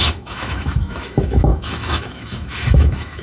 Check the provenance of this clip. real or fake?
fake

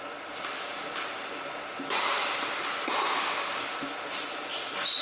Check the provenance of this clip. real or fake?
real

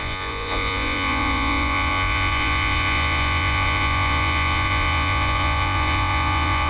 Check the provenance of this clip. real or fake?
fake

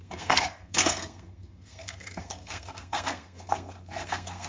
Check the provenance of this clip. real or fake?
fake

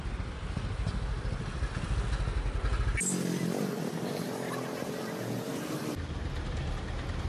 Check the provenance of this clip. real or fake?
real